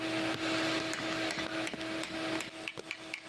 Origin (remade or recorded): recorded